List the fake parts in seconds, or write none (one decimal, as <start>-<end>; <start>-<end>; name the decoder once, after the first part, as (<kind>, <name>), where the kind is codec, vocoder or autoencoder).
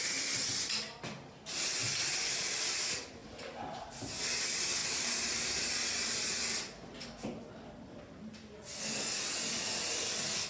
4.8-5.6 (vocoder, BigVGAN v2)